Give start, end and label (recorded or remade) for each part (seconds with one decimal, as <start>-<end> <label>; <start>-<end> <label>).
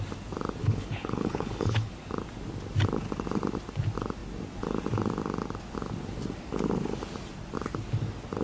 0.0-0.6 recorded; 0.6-1.9 remade; 1.9-8.4 recorded